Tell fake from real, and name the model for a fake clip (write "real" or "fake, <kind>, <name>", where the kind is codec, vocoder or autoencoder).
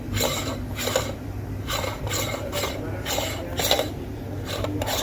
real